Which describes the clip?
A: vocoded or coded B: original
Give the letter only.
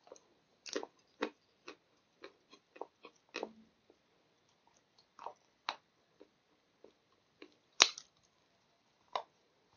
B